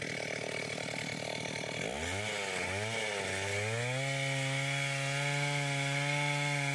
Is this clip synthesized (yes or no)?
no